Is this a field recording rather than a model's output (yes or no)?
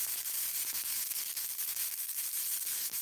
no